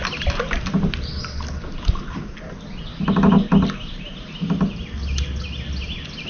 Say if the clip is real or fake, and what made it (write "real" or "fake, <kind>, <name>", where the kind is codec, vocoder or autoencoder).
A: real